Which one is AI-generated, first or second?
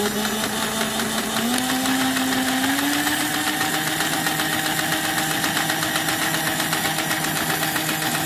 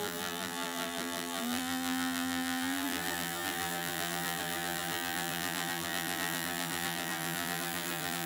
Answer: second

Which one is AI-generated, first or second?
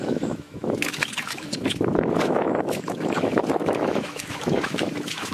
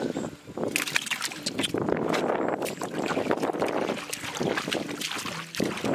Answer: first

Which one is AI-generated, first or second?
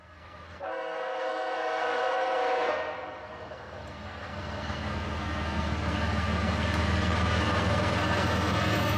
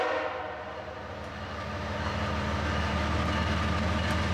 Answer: first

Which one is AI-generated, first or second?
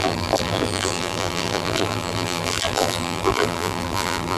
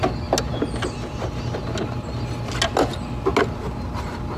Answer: first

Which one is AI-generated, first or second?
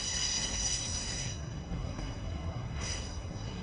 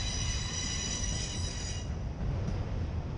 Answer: first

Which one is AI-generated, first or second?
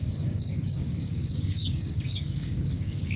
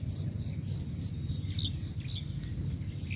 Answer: first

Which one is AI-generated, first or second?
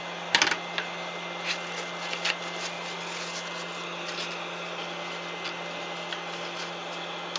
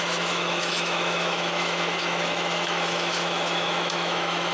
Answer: second